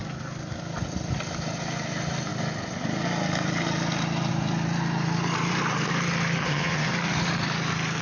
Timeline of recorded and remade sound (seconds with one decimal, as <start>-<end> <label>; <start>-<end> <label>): 0.0-6.4 recorded; 6.4-6.9 remade; 6.9-8.0 recorded